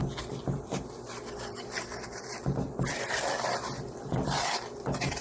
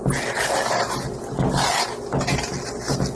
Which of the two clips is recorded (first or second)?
second